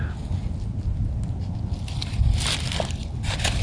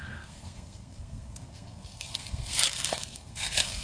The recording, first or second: first